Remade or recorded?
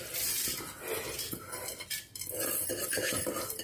recorded